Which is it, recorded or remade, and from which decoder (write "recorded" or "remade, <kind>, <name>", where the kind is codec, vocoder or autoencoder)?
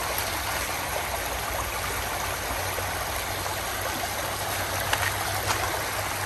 recorded